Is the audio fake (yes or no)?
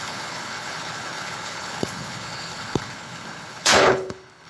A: yes